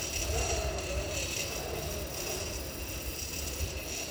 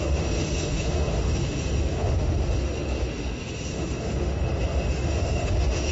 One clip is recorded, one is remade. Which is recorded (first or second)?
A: first